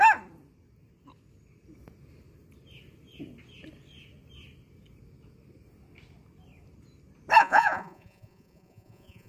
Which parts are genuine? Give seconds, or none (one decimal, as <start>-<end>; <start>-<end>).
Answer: 0.0-7.4